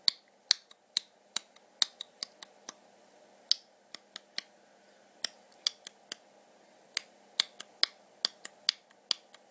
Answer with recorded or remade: recorded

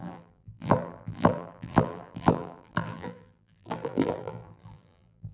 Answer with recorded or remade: remade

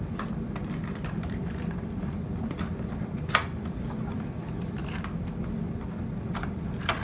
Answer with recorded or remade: recorded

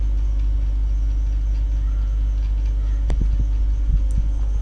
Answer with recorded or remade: recorded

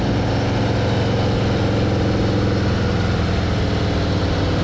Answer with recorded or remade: recorded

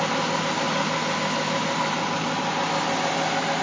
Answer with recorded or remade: recorded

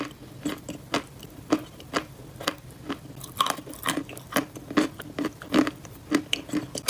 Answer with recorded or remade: remade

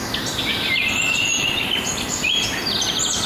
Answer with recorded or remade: recorded